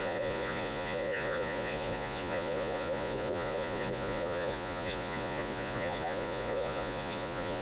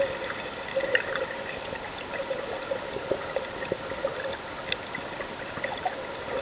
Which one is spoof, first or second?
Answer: first